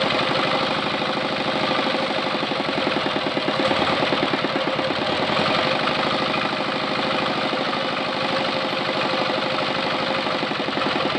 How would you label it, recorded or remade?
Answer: recorded